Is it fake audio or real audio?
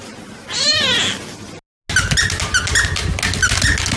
real